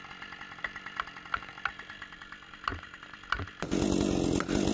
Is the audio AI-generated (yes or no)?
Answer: no